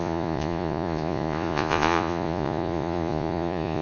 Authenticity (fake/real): fake